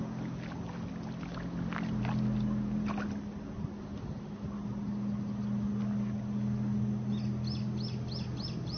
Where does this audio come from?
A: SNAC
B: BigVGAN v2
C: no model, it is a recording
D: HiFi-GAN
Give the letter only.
C